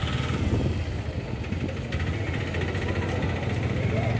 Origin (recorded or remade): recorded